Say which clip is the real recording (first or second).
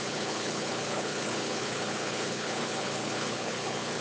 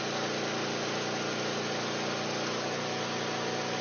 second